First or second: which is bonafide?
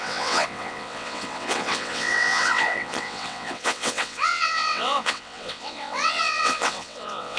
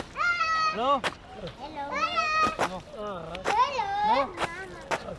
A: second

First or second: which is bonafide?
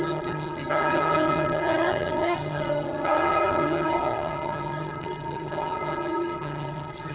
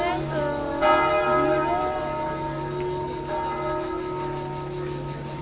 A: second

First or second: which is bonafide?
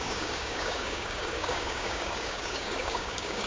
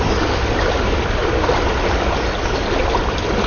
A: second